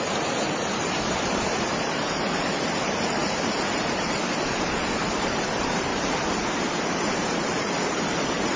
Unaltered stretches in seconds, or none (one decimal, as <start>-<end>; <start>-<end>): 5.9-6.7